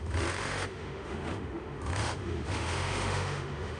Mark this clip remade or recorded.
remade